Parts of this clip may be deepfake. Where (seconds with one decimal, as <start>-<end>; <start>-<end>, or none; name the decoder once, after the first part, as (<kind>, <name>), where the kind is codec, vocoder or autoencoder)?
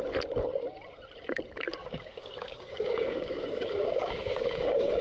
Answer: 1.8-5.0 (codec, DAC)